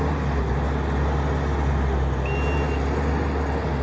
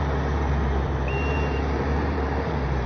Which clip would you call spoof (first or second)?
second